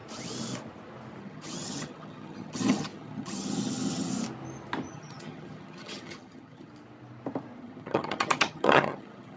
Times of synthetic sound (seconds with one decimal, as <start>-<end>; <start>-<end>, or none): 1.2-4.1; 4.9-6.7; 7.6-9.4